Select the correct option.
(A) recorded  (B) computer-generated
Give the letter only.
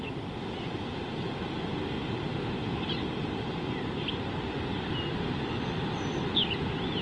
A